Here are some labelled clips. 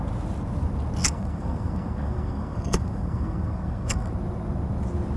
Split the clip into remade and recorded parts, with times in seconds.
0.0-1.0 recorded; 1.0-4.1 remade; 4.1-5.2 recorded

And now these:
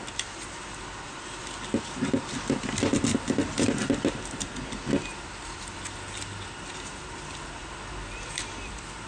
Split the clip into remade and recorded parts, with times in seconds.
0.0-9.1 recorded

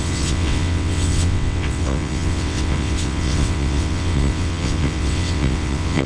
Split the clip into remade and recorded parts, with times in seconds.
0.0-6.1 remade